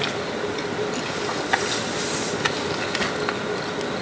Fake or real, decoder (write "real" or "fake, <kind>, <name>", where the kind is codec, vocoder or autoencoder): real